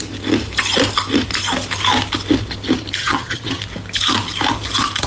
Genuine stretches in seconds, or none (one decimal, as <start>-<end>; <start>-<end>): 0.0-3.0; 3.6-5.1